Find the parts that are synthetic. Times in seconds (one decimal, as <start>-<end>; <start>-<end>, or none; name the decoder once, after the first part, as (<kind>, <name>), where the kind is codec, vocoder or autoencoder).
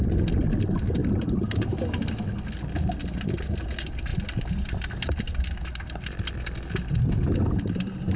none